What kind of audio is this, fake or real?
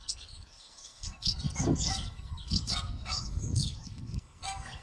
fake